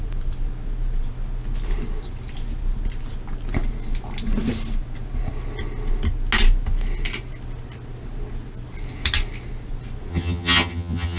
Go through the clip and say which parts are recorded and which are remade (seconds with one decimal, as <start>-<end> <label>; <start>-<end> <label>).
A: 0.0-10.1 recorded; 10.1-11.2 remade